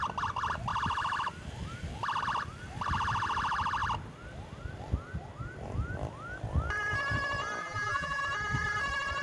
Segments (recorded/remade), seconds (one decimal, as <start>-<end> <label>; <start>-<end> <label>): 0.0-7.6 recorded; 7.6-8.2 remade; 8.2-9.2 recorded